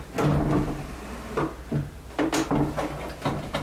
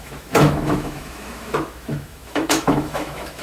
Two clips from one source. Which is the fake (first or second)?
second